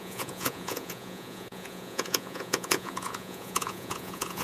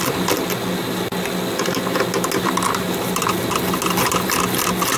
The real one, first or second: second